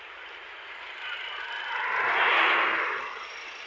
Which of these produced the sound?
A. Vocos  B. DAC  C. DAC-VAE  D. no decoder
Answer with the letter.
D